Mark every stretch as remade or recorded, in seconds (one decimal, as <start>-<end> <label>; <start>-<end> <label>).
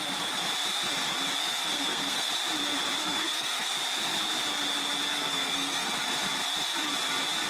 0.0-1.4 recorded; 1.4-2.3 remade; 2.3-3.0 recorded; 3.0-3.7 remade; 3.7-5.1 recorded; 5.1-5.9 remade; 5.9-7.5 recorded